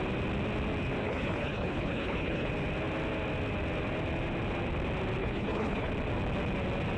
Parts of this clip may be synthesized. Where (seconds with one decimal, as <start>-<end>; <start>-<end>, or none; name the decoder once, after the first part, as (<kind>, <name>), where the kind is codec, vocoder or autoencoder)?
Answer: 1.0-2.5 (codec, HILCodec); 5.2-5.9

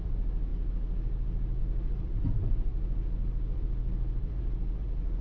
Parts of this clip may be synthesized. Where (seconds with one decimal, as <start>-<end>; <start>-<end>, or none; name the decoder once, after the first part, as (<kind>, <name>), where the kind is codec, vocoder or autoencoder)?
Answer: 0.0-0.5 (vocoder, BigVGAN v2); 1.6-5.2

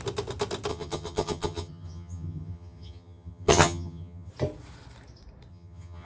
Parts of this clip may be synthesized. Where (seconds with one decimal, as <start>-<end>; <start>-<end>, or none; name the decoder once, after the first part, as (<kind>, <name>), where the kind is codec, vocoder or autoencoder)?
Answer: 0.7-4.3 (vocoder, HiFi-GAN); 5.5-6.1

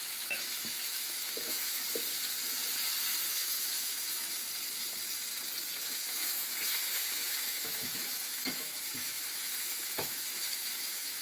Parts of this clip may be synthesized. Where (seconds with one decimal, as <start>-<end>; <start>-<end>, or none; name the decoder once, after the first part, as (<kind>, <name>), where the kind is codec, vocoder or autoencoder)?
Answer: 0.0-1.8 (autoencoder, DAC-VAE); 3.3-4.4; 5.8-11.2